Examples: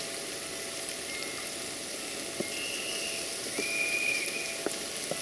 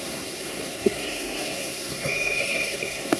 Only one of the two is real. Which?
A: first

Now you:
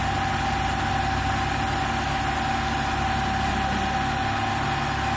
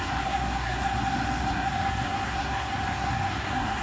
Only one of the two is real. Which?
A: first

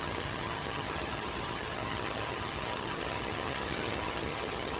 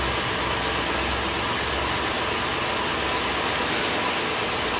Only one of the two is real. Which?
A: second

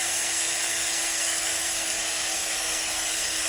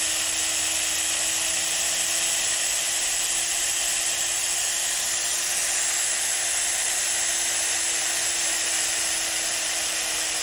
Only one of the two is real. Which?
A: second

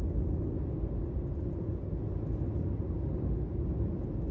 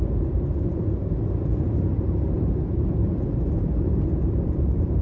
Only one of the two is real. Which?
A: first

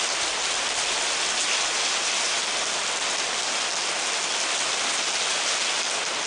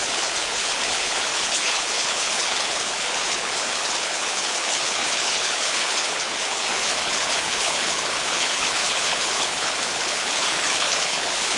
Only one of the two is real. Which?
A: first